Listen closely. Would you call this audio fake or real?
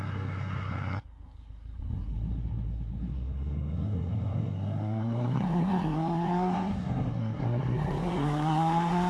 fake